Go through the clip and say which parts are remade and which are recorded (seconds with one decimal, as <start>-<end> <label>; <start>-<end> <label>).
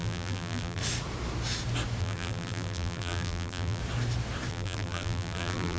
0.0-0.8 remade; 0.8-2.0 recorded; 2.0-3.8 remade; 3.8-4.5 recorded; 4.5-5.8 remade